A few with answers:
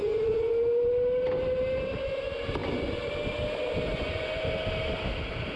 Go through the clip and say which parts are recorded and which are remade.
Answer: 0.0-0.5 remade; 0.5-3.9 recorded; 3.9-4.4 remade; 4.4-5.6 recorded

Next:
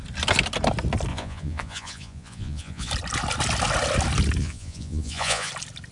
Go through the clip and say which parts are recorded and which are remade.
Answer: 0.0-1.1 recorded; 1.1-2.9 remade; 2.9-4.4 recorded; 4.4-5.5 remade; 5.5-5.9 recorded

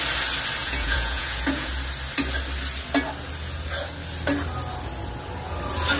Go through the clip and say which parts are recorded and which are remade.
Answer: 0.0-0.6 recorded; 0.6-1.7 remade; 1.7-6.0 recorded